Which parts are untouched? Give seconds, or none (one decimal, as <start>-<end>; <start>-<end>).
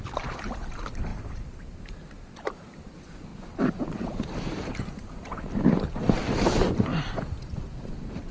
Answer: 1.1-1.8; 6.9-7.9